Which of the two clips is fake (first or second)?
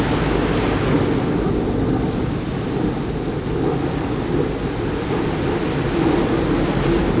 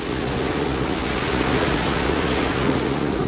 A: second